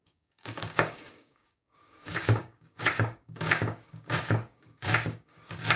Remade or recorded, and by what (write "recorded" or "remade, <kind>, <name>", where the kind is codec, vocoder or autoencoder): remade, codec, DAC